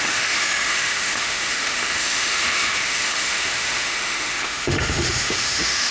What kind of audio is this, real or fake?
fake